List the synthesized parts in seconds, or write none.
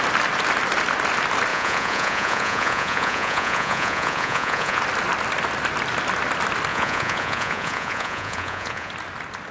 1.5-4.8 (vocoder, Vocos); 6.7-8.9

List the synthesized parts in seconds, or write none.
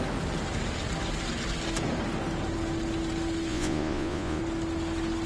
3.5-4.4 (vocoder, Vocos)